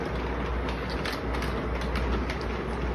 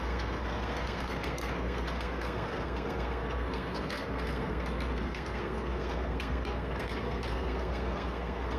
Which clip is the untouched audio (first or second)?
first